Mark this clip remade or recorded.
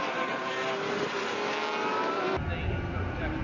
recorded